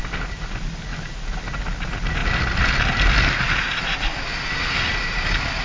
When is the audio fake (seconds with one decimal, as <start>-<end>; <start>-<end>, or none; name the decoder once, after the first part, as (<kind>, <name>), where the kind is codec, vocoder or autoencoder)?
none